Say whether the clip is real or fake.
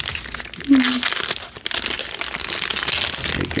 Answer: real